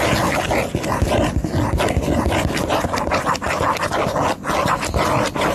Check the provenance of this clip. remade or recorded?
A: recorded